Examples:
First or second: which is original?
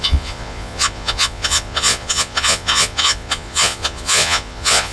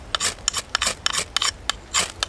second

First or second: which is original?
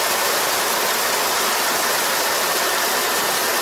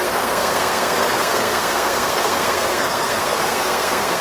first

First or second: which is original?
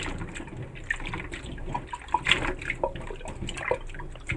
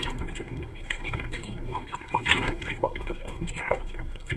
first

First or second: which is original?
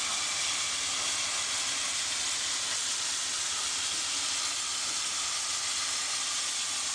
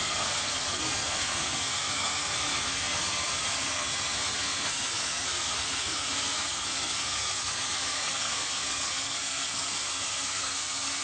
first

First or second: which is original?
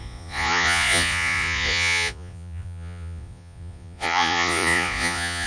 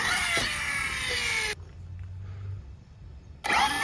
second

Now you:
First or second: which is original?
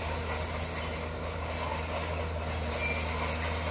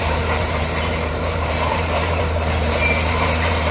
first